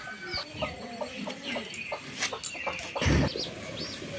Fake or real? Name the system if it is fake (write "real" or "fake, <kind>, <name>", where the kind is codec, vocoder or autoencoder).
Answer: real